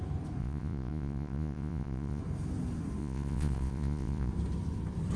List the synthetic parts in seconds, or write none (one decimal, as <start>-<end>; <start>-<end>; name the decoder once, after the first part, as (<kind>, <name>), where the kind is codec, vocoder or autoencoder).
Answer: 0.4-2.2 (vocoder, Vocos); 3.0-4.3